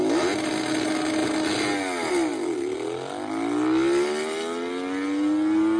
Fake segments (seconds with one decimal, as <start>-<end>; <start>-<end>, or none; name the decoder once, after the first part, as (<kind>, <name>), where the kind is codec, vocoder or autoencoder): none